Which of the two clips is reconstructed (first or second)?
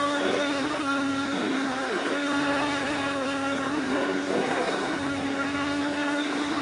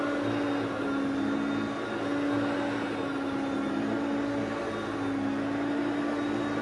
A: first